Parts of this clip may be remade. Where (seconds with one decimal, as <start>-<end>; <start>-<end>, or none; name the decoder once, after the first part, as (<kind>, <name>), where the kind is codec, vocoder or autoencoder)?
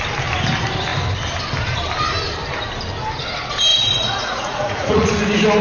3.7-5.1 (vocoder, Vocos)